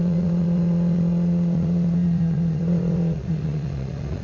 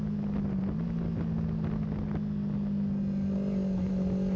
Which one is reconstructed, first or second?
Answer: first